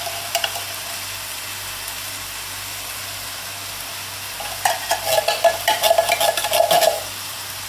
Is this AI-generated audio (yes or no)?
no